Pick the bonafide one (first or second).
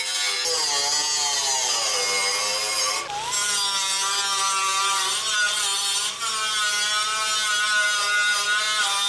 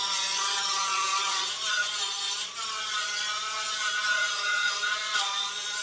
first